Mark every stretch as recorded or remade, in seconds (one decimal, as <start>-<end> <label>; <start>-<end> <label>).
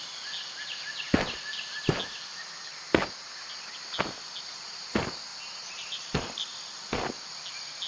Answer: 0.0-2.7 recorded; 2.7-3.4 remade; 3.4-5.3 recorded; 5.3-7.4 remade; 7.4-7.9 recorded